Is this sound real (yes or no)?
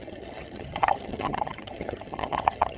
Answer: no